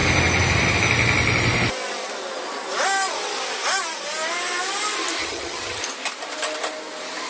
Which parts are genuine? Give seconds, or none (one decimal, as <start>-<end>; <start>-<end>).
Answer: 0.0-5.2; 5.8-7.3